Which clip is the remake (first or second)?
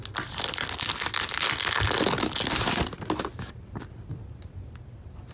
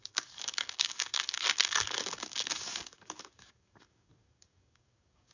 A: second